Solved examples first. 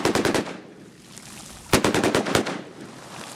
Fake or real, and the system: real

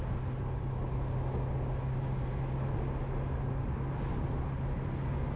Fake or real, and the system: real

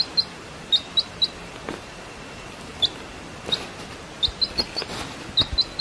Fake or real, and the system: real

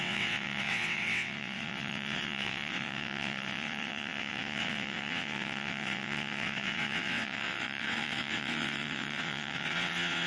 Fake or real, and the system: fake, vocoder, WaveNeXt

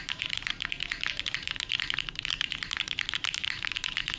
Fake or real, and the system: fake, vocoder, BigVGAN v2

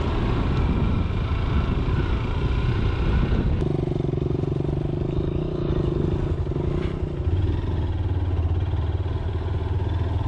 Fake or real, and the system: real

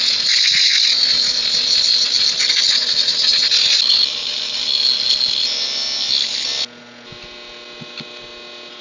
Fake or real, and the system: real